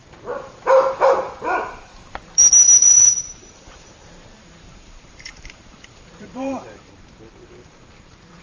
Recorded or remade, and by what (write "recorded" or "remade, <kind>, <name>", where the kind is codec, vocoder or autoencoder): remade, vocoder, BigVGAN v2